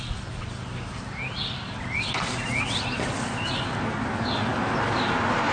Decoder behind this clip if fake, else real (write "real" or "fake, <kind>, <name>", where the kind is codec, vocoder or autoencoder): real